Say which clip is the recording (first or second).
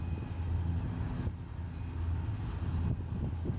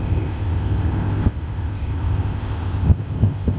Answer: first